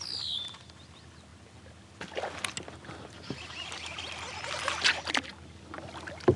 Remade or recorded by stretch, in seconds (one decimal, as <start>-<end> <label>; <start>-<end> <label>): 0.0-6.4 recorded